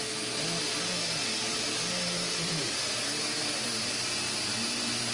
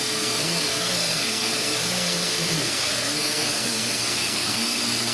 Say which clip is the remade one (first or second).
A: second